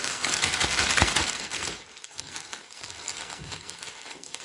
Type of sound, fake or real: fake